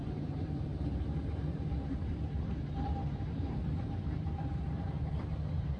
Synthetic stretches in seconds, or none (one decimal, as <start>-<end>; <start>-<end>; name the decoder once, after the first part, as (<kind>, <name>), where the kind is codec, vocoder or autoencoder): 0.0-5.8 (vocoder, BigVGAN v2)